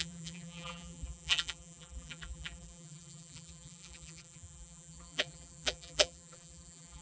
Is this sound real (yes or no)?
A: no